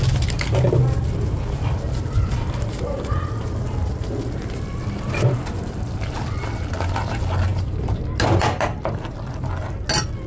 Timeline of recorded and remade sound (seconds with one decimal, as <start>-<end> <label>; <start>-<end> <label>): 0.0-10.3 recorded